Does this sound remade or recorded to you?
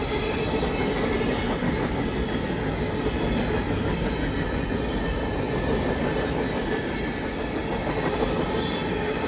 recorded